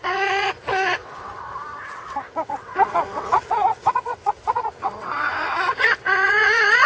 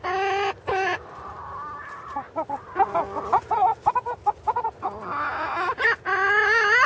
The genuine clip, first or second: second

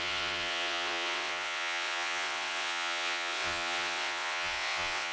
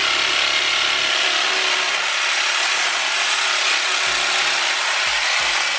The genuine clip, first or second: second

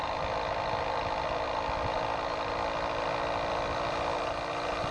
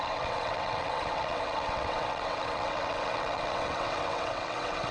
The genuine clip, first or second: first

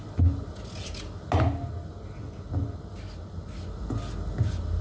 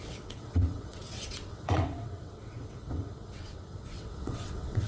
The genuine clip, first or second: first